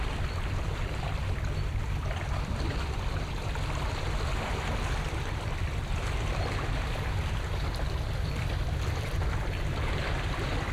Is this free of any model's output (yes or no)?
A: no